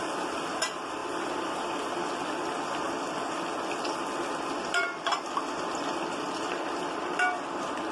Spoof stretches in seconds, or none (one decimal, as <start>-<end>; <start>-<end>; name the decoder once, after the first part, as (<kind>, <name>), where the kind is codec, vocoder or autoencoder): none